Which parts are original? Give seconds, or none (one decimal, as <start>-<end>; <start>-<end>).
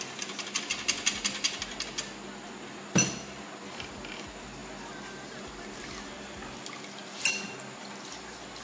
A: 0.0-8.6